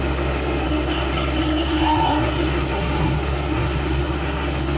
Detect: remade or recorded remade